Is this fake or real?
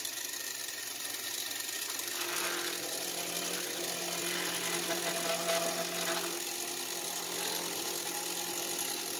real